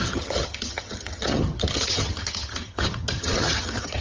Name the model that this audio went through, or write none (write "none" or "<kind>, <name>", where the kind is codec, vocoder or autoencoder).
vocoder, HiFi-GAN